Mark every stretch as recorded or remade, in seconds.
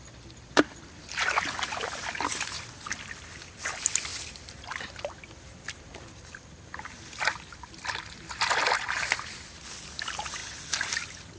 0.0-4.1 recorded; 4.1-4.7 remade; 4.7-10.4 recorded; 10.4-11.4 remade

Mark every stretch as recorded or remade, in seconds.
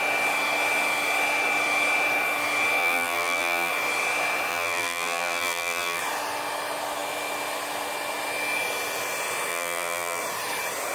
0.0-2.8 recorded; 2.8-3.7 remade; 3.7-4.5 recorded; 4.5-6.0 remade; 6.0-9.5 recorded; 9.5-10.2 remade; 10.2-10.9 recorded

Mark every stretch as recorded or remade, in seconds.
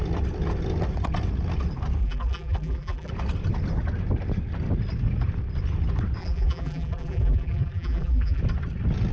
0.0-2.0 recorded; 2.0-3.1 remade; 3.1-6.2 recorded; 6.2-8.4 remade; 8.4-9.1 recorded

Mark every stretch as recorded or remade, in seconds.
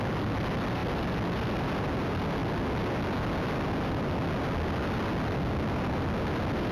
0.0-6.7 recorded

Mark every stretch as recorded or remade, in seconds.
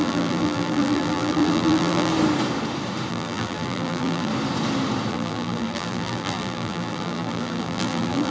0.0-2.1 remade; 2.1-3.1 recorded; 3.1-4.3 remade; 4.3-5.1 recorded; 5.1-8.3 remade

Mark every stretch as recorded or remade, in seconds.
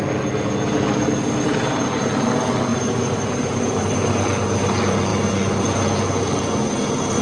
0.0-2.7 recorded; 2.7-3.8 remade; 3.8-7.2 recorded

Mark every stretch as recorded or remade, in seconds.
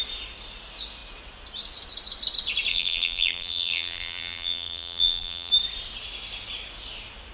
0.0-2.7 recorded; 2.7-5.5 remade; 5.5-7.3 recorded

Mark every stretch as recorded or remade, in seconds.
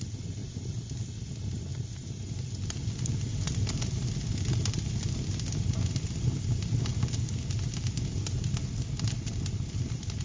0.0-0.4 recorded; 0.4-1.1 remade; 1.1-1.7 recorded; 1.7-5.6 remade; 5.6-10.2 recorded